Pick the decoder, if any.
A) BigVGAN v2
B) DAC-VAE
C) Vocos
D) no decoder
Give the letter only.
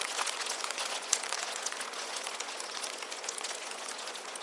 C